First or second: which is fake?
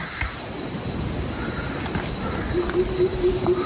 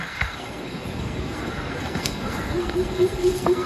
second